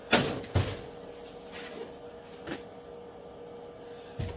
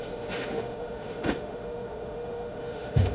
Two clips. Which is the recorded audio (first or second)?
first